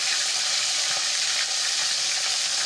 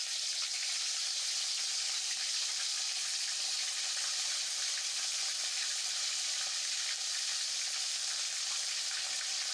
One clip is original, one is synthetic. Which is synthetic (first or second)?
first